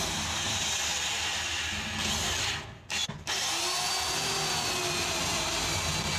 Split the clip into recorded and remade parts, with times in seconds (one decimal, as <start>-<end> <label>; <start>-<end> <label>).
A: 0.0-6.2 recorded